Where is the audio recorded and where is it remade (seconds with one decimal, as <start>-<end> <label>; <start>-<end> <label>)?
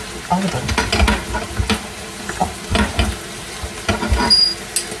0.0-2.4 recorded; 2.4-3.6 remade; 3.6-5.0 recorded